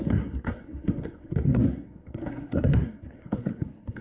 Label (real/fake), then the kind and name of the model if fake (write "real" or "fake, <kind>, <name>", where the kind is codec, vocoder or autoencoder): fake, codec, SNAC